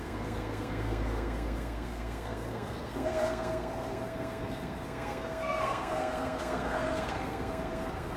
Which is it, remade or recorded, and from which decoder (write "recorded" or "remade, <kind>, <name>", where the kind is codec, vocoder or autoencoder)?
remade, codec, SNAC